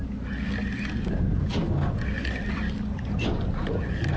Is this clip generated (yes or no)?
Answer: no